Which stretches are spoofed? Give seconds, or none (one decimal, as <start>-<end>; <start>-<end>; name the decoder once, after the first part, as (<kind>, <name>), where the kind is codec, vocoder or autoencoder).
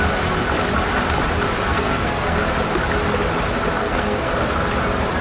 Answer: 1.7-2.4 (codec, SNAC); 3.8-4.3